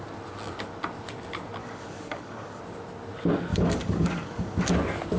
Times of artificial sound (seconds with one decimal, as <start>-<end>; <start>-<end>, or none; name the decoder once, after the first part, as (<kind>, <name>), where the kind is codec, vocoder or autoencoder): 1.6-2.6 (codec, DAC); 3.5-4.7

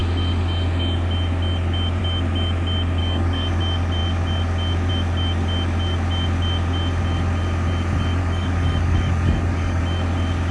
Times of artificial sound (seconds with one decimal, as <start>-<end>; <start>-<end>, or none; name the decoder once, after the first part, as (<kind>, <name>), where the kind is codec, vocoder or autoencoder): 3.0-3.6 (codec, DAC); 8.2-9.8

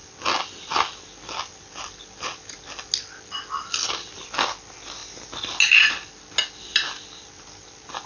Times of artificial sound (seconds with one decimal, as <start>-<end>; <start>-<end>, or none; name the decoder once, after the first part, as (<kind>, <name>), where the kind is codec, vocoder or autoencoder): none

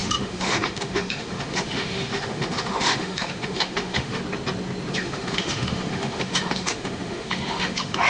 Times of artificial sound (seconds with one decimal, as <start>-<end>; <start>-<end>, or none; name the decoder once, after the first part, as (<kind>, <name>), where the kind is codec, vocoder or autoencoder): 0.0-4.2 (autoencoder, DAC-VAE); 4.9-8.1

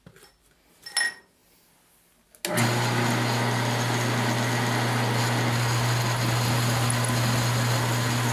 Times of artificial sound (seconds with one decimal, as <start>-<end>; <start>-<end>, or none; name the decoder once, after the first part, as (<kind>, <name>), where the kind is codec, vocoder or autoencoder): none